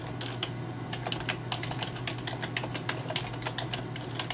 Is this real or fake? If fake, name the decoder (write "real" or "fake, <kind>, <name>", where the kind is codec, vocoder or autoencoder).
real